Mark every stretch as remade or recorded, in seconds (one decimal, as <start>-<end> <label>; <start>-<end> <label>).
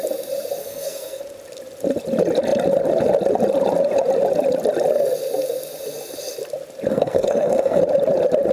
0.0-0.6 recorded; 0.6-1.2 remade; 1.2-6.9 recorded; 6.9-7.8 remade; 7.8-8.5 recorded